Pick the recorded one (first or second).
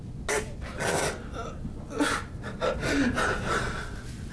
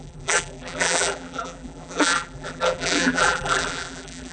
first